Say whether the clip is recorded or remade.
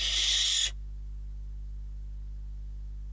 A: recorded